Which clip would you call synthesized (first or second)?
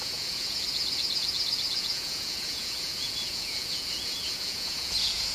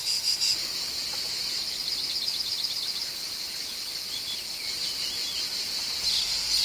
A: first